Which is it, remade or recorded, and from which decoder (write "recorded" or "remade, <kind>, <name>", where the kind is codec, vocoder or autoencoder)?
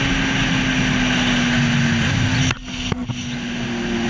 recorded